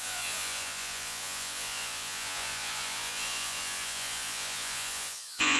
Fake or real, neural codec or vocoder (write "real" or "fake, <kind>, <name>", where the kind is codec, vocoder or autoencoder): fake, vocoder, Vocos